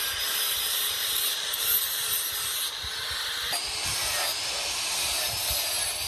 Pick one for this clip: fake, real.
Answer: real